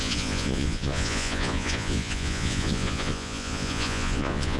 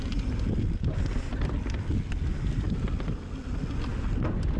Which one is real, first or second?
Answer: second